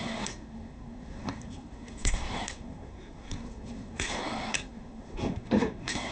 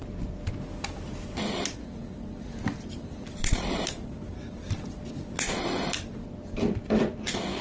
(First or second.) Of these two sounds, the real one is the second